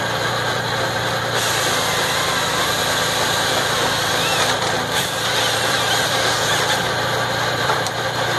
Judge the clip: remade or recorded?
remade